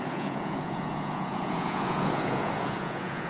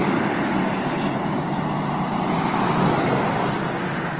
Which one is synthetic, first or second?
first